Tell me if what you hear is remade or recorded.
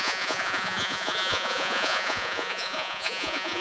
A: remade